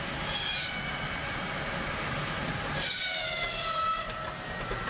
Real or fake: real